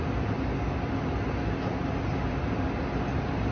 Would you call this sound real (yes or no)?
yes